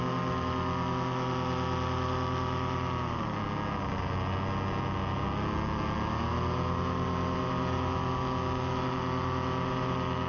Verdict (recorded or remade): recorded